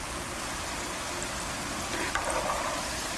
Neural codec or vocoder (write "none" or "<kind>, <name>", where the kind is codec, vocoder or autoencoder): vocoder, BigVGAN v2